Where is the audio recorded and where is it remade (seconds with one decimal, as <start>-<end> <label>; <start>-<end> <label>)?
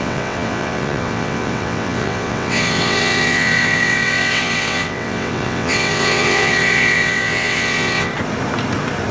0.0-8.1 remade; 8.1-9.1 recorded